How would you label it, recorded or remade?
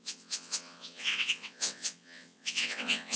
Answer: remade